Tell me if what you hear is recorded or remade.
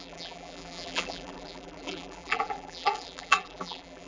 remade